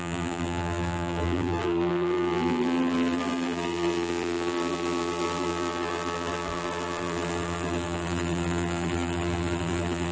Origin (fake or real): fake